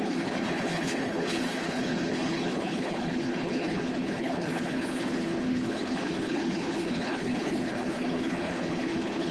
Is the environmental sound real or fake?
fake